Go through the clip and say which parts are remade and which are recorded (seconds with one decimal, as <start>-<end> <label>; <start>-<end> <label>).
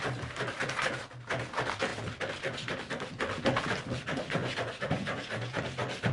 0.0-4.4 recorded; 4.4-5.6 remade; 5.6-6.1 recorded